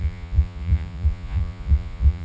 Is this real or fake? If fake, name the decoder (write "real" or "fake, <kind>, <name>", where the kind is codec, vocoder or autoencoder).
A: fake, vocoder, Vocos